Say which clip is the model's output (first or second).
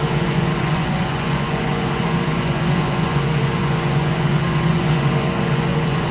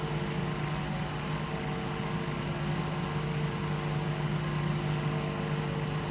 first